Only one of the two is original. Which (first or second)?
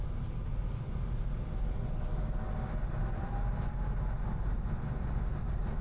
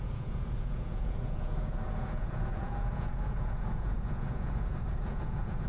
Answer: first